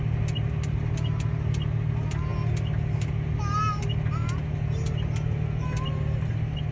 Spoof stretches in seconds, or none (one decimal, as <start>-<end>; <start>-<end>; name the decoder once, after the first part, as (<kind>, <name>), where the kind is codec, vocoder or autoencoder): none

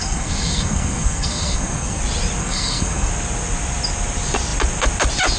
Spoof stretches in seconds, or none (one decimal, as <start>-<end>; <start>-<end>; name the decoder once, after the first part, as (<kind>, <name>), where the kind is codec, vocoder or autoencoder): 0.0-2.0 (codec, SNAC); 2.4-3.1

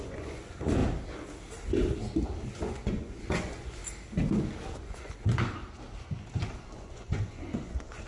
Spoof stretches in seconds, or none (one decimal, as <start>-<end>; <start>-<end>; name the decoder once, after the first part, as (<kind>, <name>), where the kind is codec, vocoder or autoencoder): 0.0-0.8 (vocoder, Vocos); 2.5-3.8; 4.8-5.6; 6.6-8.1

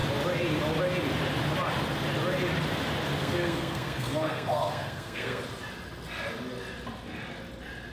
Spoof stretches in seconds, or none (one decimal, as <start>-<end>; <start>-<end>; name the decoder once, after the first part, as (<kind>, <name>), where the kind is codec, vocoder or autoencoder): 3.2-5.4 (codec, SNAC)

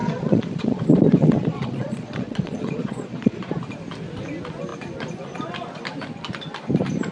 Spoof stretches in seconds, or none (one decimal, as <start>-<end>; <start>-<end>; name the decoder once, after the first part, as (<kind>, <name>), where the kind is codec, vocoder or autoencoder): 0.0-3.6 (vocoder, Vocos)